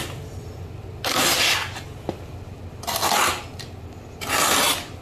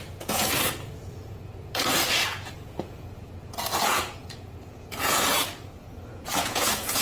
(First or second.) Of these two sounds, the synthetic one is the second